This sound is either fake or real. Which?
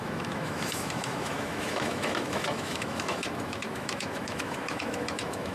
fake